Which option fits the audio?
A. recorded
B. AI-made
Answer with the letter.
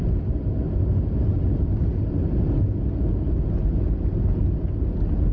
A